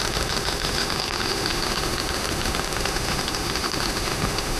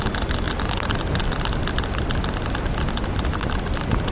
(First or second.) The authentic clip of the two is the second